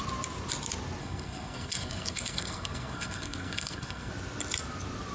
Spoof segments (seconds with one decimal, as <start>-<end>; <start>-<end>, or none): 1.0-4.1